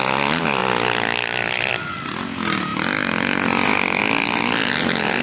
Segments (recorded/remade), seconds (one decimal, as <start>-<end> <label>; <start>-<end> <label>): 0.0-5.2 recorded